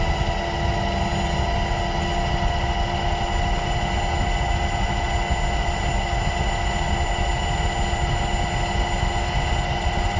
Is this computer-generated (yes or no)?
no